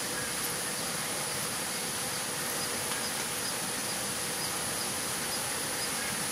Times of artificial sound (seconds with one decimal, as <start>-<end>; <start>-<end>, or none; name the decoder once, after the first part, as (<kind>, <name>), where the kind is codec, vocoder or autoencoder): none